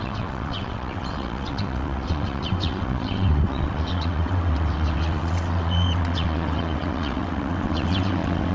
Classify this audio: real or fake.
fake